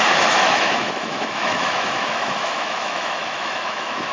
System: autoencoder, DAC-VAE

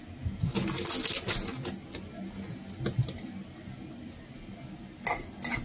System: none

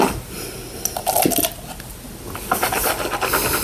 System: none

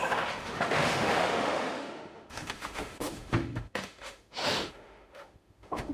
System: autoencoder, DAC-VAE